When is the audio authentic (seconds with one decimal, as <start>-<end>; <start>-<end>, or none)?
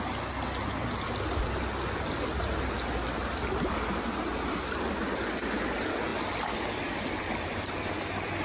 0.0-8.4